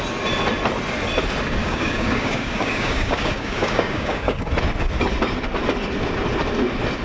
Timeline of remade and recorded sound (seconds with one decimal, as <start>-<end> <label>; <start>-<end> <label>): 0.0-1.6 recorded; 1.6-4.5 remade; 4.5-7.0 recorded